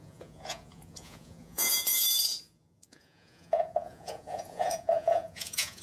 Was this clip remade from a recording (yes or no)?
yes